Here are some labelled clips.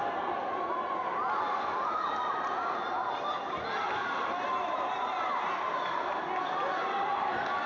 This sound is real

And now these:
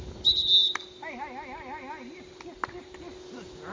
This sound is real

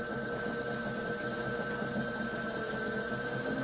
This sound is real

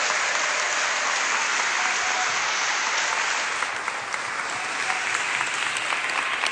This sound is real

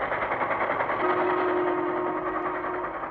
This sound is real